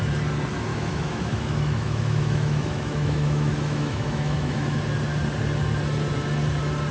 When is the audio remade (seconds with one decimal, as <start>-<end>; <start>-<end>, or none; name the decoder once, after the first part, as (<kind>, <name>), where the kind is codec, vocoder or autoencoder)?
0.7-4.8 (autoencoder, DAC-VAE)